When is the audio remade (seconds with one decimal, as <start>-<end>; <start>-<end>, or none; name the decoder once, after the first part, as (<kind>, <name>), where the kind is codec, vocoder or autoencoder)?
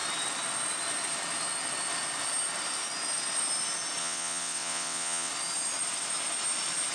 4.0-5.3 (vocoder, WaveNeXt)